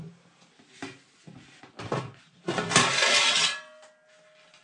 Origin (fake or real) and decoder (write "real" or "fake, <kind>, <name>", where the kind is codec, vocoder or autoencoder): real